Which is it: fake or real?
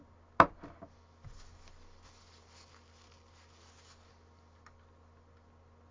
real